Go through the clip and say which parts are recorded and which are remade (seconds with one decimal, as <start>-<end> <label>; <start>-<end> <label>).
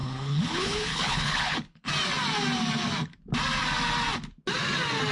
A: 0.0-1.9 remade; 1.9-5.1 recorded